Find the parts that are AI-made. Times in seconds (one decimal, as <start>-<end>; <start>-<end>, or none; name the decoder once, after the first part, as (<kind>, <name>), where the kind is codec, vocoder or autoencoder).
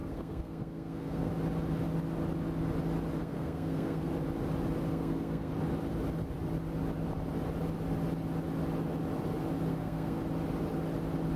0.0-1.3 (codec, SNAC); 3.2-4.1; 4.9-5.5; 9.7-10.2